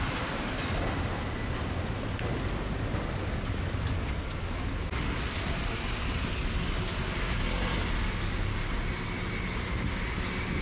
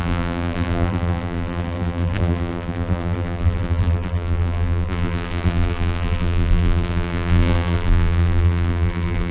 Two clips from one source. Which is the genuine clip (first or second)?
first